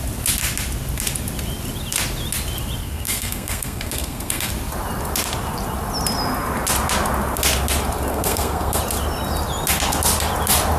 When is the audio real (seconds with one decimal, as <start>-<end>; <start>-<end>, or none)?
0.0-2.8; 4.5-8.1; 8.8-10.8

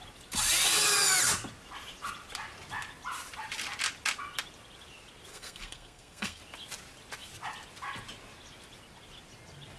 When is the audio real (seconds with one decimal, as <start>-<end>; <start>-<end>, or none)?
0.0-5.3; 6.4-9.8

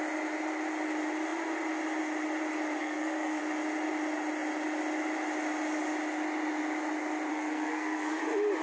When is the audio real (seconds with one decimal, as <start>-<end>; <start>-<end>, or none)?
0.0-2.8; 3.4-7.3; 8.2-8.6

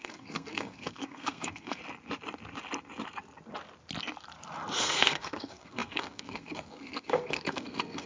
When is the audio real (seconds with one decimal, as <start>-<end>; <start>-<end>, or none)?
1.8-4.8

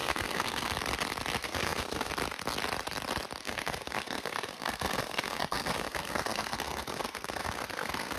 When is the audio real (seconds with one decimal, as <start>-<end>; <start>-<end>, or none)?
0.7-1.4; 2.1-3.4

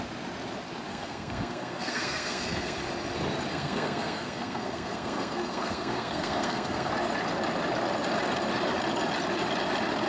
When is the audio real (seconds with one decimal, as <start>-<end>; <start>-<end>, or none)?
0.0-0.9; 2.8-3.5; 6.9-10.1

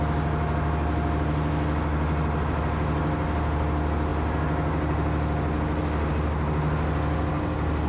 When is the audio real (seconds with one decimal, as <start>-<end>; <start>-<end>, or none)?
0.0-7.9